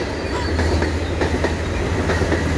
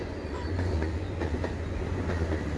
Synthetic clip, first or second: second